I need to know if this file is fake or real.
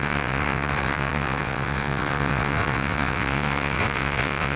fake